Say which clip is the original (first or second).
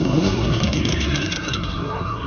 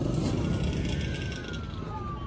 second